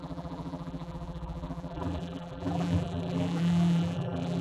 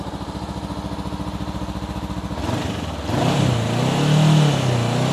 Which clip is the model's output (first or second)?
first